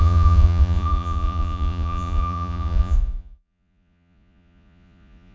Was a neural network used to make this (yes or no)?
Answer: yes